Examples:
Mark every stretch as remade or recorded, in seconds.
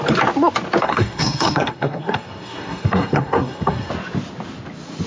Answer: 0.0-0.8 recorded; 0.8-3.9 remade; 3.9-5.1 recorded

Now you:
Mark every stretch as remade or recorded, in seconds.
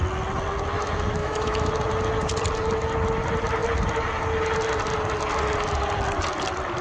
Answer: 0.0-1.2 recorded; 1.2-1.7 remade; 1.7-6.8 recorded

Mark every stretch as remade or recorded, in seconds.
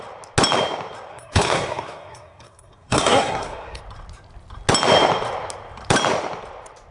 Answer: 0.0-1.1 recorded; 1.1-3.8 remade; 3.8-6.9 recorded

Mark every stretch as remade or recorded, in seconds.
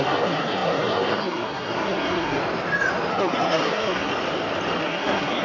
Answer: 0.0-2.4 remade; 2.4-3.1 recorded; 3.1-4.1 remade; 4.1-4.8 recorded; 4.8-5.4 remade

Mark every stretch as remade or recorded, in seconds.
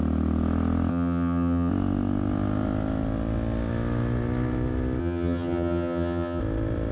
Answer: 0.0-0.9 recorded; 0.9-1.7 remade; 1.7-5.0 recorded; 5.0-6.4 remade; 6.4-6.9 recorded